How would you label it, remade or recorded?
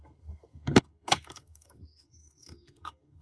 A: remade